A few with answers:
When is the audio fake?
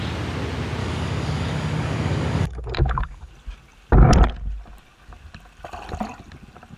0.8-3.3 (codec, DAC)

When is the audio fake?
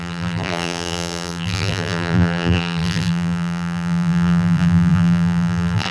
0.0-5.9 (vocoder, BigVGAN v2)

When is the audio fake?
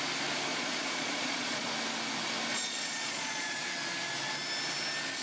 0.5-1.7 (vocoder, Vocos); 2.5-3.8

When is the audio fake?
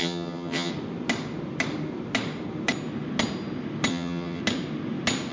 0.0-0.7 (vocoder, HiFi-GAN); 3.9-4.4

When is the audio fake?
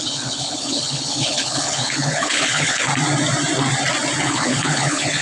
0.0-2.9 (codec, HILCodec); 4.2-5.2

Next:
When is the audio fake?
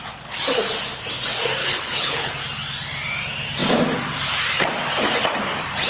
1.6-2.3 (codec, HILCodec)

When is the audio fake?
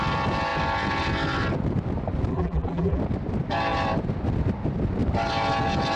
2.3-3.0 (vocoder, BigVGAN v2)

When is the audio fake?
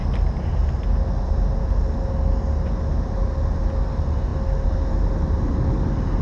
none